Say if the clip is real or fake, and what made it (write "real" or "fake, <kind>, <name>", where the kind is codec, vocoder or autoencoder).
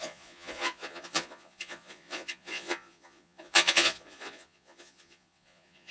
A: fake, vocoder, Vocos